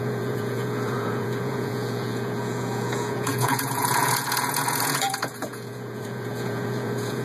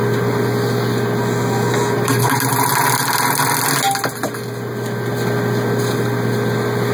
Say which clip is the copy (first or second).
first